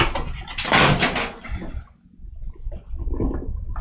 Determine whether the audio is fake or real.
real